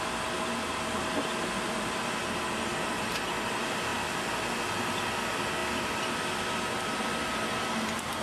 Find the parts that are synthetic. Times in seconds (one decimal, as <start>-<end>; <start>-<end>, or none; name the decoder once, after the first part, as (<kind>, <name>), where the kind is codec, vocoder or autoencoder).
none